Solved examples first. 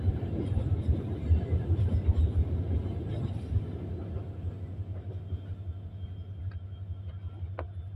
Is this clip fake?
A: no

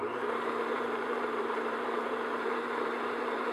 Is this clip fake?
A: yes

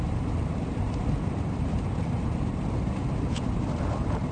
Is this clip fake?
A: yes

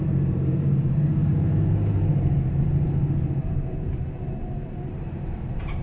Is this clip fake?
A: yes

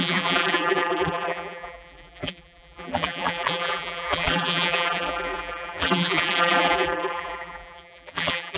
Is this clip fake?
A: yes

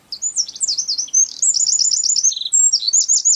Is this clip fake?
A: no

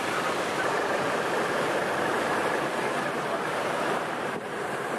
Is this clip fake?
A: yes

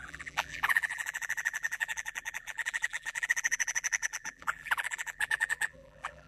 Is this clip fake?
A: yes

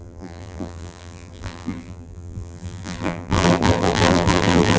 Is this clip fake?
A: yes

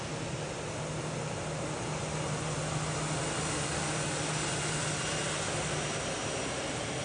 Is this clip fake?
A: no